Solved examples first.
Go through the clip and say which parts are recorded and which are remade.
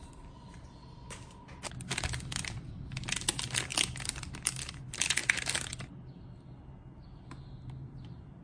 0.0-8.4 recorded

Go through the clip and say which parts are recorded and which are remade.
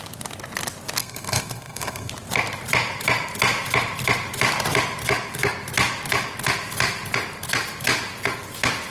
0.0-1.0 recorded; 1.0-2.1 remade; 2.1-8.9 recorded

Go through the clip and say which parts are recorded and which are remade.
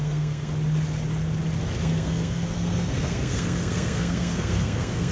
0.0-0.5 remade; 0.5-1.8 recorded; 1.8-5.1 remade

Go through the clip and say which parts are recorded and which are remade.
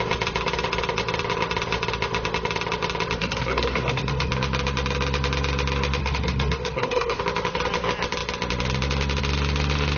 0.0-3.2 recorded; 3.2-4.3 remade; 4.3-6.0 recorded; 6.0-7.2 remade; 7.2-10.0 recorded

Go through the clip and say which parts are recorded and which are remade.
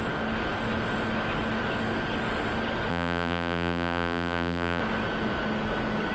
0.0-2.9 recorded; 2.9-4.8 remade; 4.8-6.1 recorded